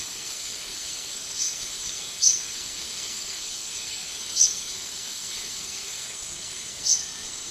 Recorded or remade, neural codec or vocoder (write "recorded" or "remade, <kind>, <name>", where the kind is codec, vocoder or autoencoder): remade, codec, SNAC